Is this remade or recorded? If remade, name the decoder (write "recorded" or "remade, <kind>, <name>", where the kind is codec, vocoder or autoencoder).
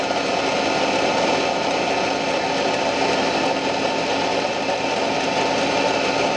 recorded